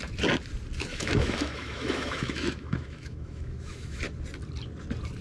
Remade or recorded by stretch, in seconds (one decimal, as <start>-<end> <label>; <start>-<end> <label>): 0.0-0.9 recorded; 0.9-4.0 remade; 4.0-5.2 recorded